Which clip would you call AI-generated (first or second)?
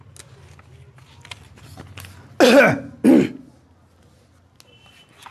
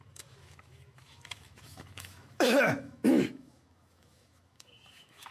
second